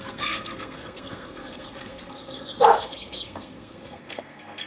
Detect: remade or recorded remade